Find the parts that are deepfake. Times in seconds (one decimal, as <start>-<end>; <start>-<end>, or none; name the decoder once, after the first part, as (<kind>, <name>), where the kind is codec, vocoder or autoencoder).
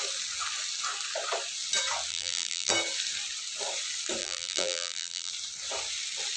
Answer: 2.1-2.7 (vocoder, BigVGAN v2); 4.2-5.3